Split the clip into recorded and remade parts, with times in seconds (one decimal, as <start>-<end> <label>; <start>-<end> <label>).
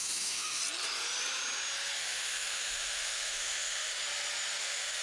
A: 0.0-0.6 remade; 0.6-2.0 recorded; 2.0-4.0 remade; 4.0-4.6 recorded; 4.6-5.0 remade